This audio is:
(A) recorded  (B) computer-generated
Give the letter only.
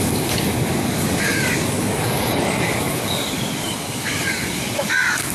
B